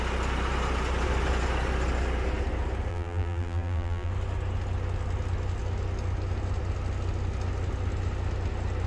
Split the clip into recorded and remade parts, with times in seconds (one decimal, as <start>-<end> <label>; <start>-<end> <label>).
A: 0.0-2.9 recorded; 2.9-4.1 remade; 4.1-8.9 recorded